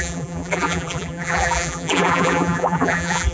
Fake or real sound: fake